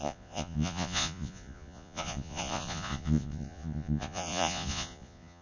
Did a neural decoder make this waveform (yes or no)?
yes